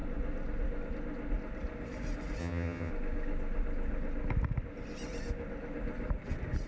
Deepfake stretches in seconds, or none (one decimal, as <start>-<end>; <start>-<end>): 2.4-2.9